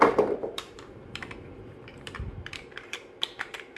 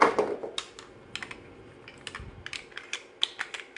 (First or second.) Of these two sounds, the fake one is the first